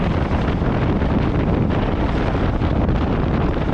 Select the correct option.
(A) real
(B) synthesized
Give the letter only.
A